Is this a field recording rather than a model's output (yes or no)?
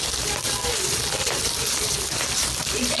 yes